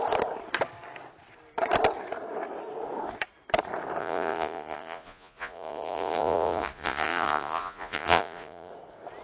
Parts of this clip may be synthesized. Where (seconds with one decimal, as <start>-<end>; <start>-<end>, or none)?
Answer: 4.0-8.7